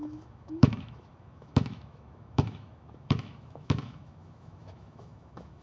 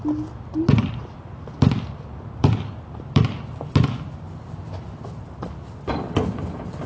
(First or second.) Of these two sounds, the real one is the second